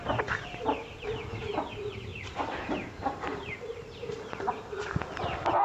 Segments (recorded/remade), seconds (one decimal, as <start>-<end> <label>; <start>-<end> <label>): 0.0-2.1 recorded; 2.1-4.5 remade; 4.5-5.6 recorded